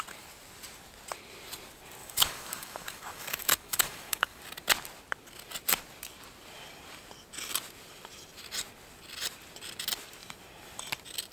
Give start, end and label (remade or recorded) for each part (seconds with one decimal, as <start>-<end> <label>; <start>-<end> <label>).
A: 0.0-2.0 recorded; 2.0-4.4 remade; 4.4-11.3 recorded